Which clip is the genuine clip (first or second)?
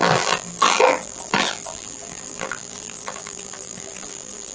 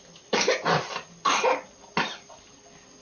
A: second